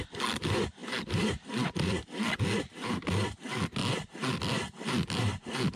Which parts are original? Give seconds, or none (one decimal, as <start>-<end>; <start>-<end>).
0.0-0.8; 2.4-5.8